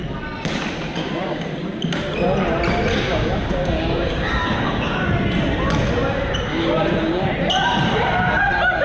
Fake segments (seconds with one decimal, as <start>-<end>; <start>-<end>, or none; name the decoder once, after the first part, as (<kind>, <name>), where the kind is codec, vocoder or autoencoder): 1.0-1.5 (codec, DAC); 3.1-5.1